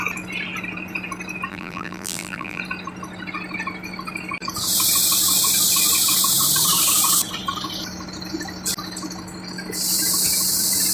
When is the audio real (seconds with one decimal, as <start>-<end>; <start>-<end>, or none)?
0.0-1.5; 2.6-10.9